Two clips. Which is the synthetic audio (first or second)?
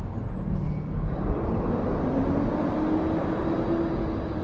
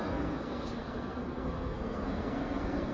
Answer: second